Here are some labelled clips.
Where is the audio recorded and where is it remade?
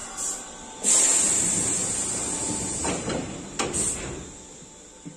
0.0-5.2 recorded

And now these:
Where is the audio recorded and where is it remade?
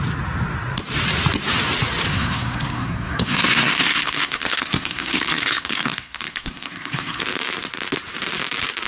0.0-2.1 recorded; 2.1-7.2 remade; 7.2-8.9 recorded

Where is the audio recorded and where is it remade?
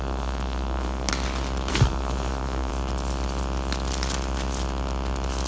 0.0-1.1 remade; 1.1-1.7 recorded; 1.7-2.7 remade; 2.7-5.5 recorded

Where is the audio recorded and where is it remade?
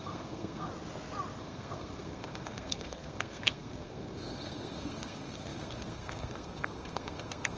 0.0-0.7 remade; 0.7-1.4 recorded; 1.4-7.6 remade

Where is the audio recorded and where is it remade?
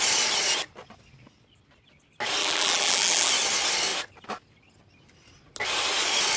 0.0-2.4 recorded; 2.4-3.3 remade; 3.3-6.4 recorded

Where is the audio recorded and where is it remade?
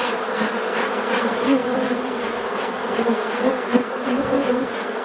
0.0-5.0 remade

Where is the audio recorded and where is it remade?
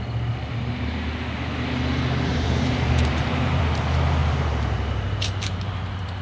0.0-2.3 recorded; 2.3-3.6 remade; 3.6-4.2 recorded; 4.2-5.7 remade; 5.7-6.2 recorded